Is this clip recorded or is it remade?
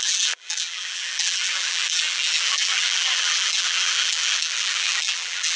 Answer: remade